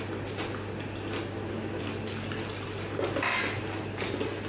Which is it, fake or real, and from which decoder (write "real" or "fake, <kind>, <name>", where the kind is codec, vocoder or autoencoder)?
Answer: real